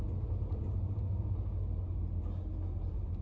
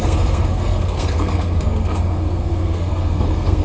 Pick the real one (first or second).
first